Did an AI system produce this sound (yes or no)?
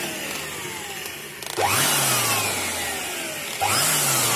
no